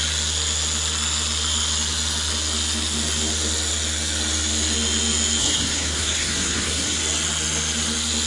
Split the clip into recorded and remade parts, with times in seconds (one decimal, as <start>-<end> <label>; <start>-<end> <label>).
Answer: 0.0-5.4 recorded; 5.4-7.0 remade; 7.0-8.3 recorded